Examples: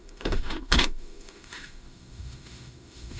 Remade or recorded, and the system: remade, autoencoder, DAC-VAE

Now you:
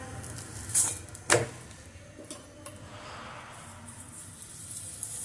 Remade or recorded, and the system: recorded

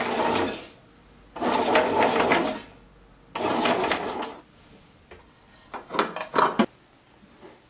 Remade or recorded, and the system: recorded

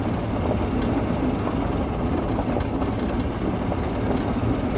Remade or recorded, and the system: recorded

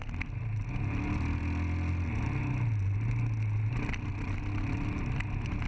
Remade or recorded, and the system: recorded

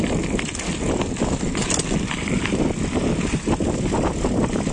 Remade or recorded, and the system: recorded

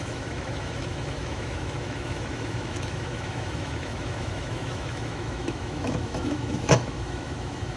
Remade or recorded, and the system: remade, autoencoder, DAC-VAE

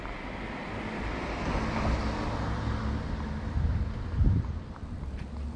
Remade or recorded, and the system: recorded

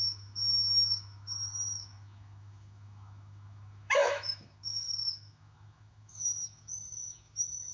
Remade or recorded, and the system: remade, autoencoder, DAC-VAE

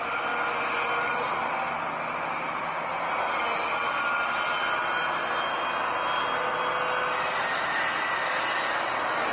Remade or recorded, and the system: recorded